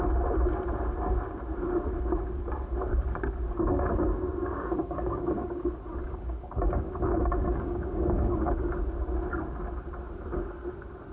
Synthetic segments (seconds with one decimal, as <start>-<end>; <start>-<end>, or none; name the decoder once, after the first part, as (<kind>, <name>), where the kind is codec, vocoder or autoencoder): 3.7-5.6 (codec, DAC); 6.0-8.7